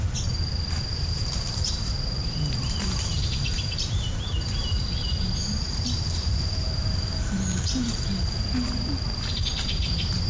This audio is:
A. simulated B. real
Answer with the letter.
A